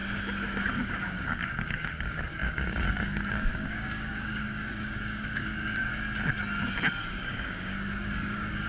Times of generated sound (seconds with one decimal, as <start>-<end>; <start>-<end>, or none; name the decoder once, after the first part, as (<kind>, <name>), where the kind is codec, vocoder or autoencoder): 0.8-5.9 (codec, DAC); 7.1-8.7